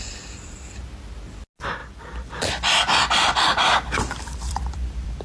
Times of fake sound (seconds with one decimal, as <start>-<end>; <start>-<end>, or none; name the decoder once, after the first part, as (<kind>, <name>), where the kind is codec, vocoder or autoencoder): 1.8-5.2 (vocoder, BigVGAN v2)